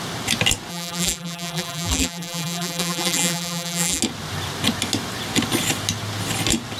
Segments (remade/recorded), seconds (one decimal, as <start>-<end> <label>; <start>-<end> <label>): 0.0-0.7 recorded; 0.7-4.0 remade; 4.0-6.8 recorded